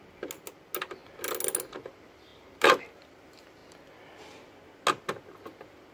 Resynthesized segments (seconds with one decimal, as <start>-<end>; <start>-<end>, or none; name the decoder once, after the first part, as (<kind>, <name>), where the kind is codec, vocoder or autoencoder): none